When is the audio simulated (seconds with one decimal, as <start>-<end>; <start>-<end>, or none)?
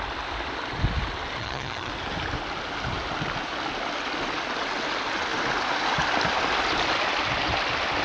1.4-1.9